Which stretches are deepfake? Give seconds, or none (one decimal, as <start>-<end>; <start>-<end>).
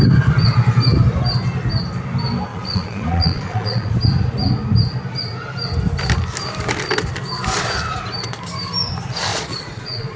2.5-3.9; 9.3-10.2